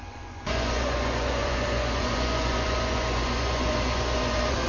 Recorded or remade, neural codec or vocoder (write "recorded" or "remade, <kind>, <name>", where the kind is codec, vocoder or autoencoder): remade, vocoder, Vocos